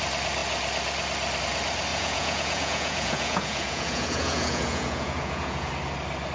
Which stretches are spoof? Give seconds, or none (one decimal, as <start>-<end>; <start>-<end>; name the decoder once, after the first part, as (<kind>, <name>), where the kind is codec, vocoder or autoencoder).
1.9-5.7 (vocoder, Vocos)